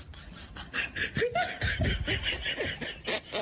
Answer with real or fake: real